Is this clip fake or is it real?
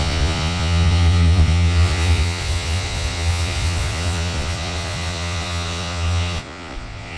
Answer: fake